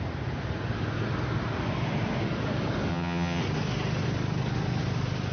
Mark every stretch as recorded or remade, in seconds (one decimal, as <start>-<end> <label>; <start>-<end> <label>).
0.0-2.9 recorded; 2.9-3.4 remade; 3.4-5.3 recorded